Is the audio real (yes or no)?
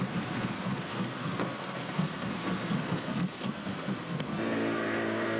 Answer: no